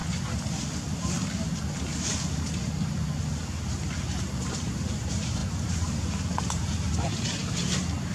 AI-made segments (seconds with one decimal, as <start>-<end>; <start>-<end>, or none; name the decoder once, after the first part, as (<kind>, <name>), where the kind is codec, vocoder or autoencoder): 4.9-8.1 (vocoder, BigVGAN v2)